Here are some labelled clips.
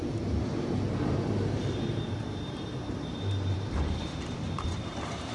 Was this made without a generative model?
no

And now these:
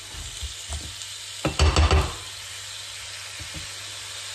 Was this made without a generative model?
yes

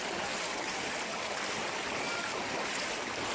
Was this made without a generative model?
yes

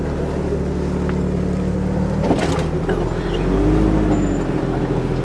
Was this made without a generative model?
yes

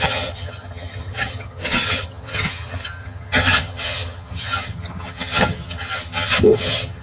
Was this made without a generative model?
no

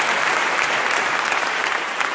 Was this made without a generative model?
yes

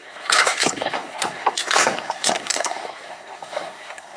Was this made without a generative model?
no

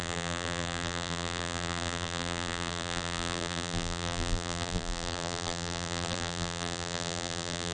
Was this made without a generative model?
no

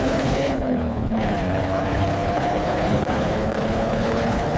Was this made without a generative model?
no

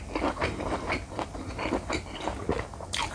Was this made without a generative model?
yes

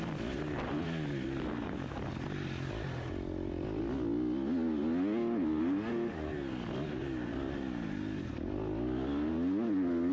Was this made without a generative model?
yes